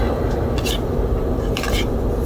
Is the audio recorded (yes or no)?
yes